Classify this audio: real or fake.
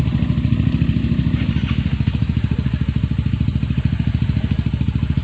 real